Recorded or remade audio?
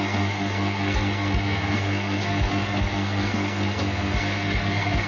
remade